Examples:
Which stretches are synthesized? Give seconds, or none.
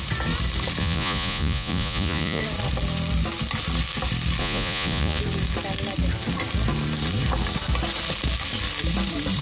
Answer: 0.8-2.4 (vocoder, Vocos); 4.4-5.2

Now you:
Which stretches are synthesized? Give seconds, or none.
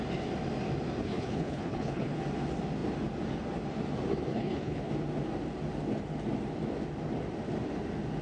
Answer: 1.0-2.2 (codec, HILCodec); 4.3-4.9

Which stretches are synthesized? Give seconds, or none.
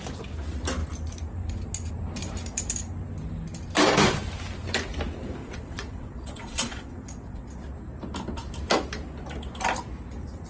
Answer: 5.4-7.5 (vocoder, WaveNeXt)